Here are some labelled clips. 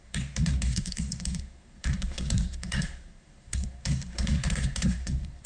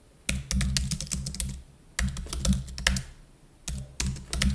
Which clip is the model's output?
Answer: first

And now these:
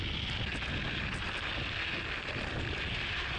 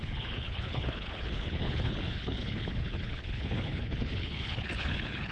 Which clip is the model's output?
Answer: second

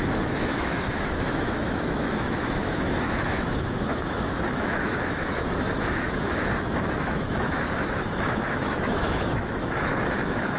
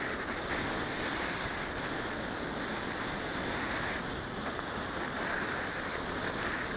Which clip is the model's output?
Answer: first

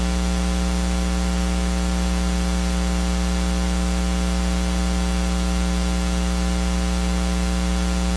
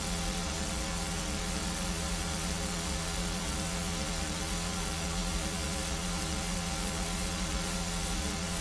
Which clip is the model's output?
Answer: second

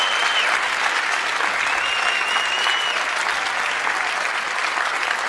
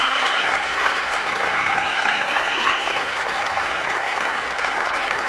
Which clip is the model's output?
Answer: second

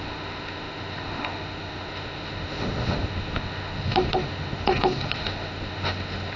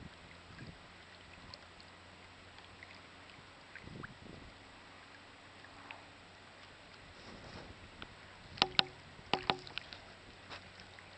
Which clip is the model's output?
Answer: first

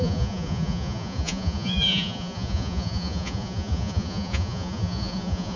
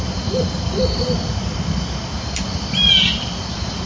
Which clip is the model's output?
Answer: first